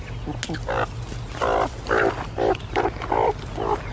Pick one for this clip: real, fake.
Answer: real